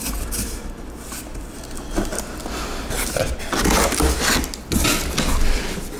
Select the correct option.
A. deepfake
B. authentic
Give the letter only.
B